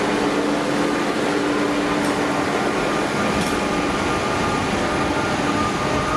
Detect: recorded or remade recorded